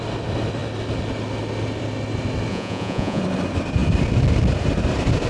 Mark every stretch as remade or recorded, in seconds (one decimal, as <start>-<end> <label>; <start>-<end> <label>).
0.0-2.5 recorded; 2.5-3.2 remade; 3.2-5.3 recorded